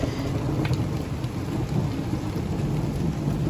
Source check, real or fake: real